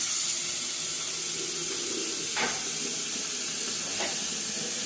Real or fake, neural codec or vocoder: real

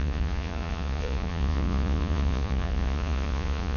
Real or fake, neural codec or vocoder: fake, vocoder, Vocos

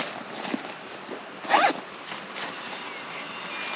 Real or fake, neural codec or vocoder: real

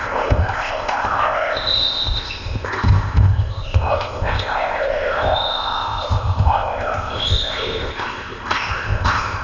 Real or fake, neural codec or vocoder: fake, codec, ZipCodec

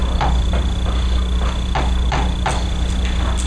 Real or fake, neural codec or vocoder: real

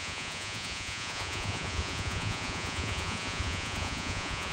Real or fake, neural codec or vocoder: fake, vocoder, Vocos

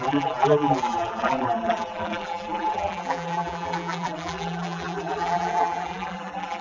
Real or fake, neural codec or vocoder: fake, vocoder, BigVGAN v2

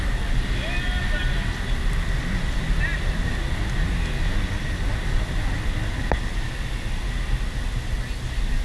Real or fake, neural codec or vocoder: real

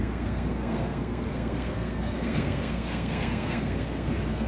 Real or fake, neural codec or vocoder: fake, codec, SNAC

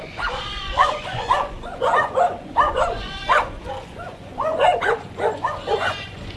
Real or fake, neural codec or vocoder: fake, vocoder, Vocos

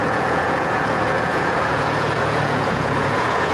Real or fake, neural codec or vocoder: fake, vocoder, Vocos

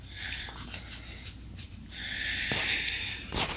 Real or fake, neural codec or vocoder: real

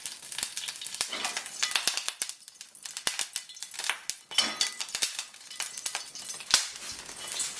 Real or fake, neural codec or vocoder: real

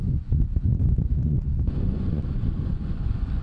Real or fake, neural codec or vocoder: fake, vocoder, Vocos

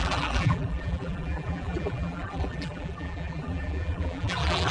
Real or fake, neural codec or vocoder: fake, vocoder, BigVGAN v2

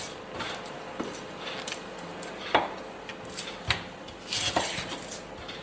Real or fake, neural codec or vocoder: real